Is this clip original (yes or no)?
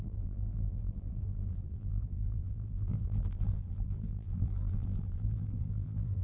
no